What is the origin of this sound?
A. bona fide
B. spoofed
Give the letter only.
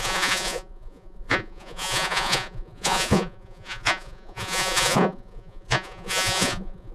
B